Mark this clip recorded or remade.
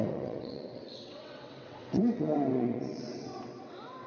remade